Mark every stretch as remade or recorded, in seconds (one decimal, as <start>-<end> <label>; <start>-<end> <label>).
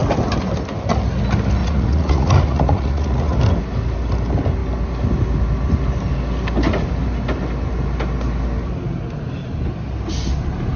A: 0.0-1.6 recorded; 1.6-3.4 remade; 3.4-10.8 recorded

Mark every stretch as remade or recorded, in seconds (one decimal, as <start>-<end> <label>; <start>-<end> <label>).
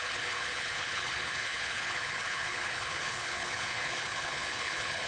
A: 0.0-5.1 remade